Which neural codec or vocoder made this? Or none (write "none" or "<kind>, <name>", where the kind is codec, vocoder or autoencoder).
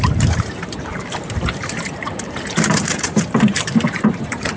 vocoder, BigVGAN v2